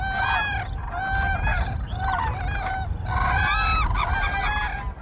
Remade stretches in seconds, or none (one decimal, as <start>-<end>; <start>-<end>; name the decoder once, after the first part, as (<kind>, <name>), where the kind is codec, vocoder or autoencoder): 1.5-4.5 (vocoder, BigVGAN v2)